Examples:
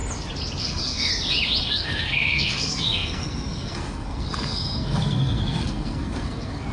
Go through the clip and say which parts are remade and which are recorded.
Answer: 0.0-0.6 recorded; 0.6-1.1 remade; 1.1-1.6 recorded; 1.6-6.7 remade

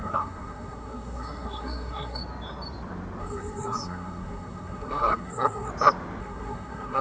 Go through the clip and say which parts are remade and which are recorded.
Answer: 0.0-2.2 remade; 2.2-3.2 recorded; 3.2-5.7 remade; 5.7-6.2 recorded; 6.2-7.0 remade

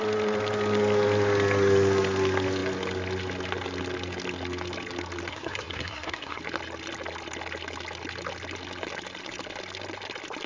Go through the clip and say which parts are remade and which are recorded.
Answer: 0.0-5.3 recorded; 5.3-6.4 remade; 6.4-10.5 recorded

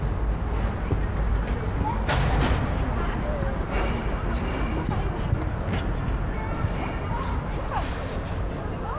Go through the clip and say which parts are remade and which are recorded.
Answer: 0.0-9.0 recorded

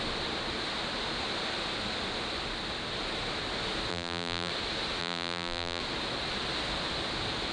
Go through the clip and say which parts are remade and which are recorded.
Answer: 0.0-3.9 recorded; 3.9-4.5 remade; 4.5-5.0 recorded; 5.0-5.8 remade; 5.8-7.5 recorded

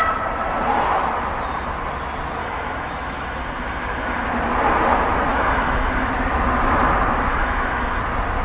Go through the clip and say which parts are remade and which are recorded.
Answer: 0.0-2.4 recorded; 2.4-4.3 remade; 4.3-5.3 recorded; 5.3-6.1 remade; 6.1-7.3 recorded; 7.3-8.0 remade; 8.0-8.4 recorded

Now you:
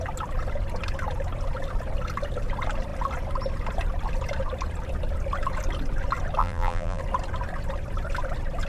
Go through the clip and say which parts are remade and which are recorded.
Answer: 0.0-6.4 recorded; 6.4-7.0 remade; 7.0-8.7 recorded